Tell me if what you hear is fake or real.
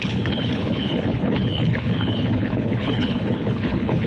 fake